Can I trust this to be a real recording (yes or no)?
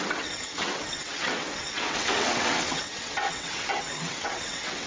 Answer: no